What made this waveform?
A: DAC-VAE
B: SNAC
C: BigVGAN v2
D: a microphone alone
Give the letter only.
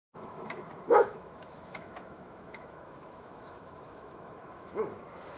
A